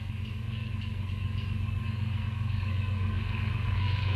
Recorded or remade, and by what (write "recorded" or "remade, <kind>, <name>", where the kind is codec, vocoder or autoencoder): remade, codec, SNAC